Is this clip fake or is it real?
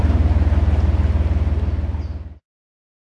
real